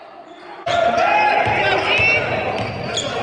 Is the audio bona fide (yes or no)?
yes